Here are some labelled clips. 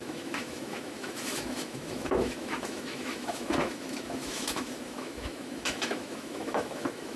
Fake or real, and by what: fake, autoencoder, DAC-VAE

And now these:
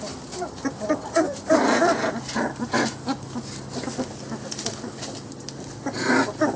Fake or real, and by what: real